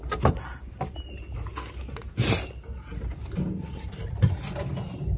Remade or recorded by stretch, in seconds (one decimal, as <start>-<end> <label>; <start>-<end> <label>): 0.0-5.2 recorded